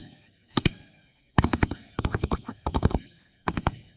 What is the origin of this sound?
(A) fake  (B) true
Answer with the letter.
A